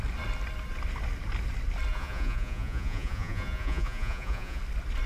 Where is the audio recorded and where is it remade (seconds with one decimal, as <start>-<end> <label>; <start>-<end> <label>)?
0.0-1.9 recorded; 1.9-4.6 remade; 4.6-5.1 recorded